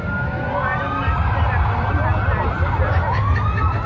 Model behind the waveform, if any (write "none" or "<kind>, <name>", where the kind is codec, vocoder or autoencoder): none